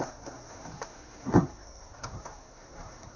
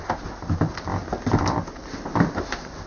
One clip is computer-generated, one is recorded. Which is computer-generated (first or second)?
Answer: first